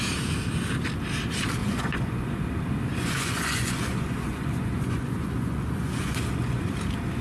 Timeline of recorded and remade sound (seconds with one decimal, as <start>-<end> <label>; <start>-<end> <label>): 0.0-1.6 recorded; 1.6-2.4 remade; 2.4-2.9 recorded; 2.9-6.7 remade; 6.7-7.2 recorded